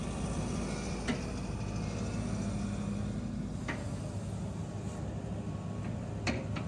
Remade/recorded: recorded